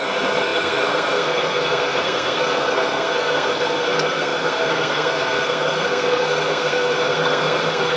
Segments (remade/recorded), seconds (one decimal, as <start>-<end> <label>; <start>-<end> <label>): 0.0-8.0 remade